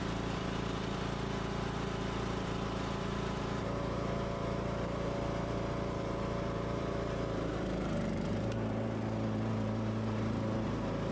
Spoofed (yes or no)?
yes